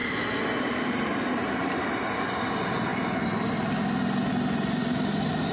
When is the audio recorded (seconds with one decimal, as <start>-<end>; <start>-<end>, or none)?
0.0-5.5